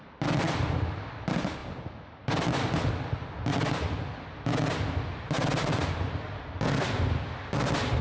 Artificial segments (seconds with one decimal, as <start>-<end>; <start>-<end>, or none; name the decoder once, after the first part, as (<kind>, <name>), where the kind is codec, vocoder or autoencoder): none